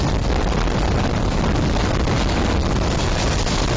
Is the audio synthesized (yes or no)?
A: no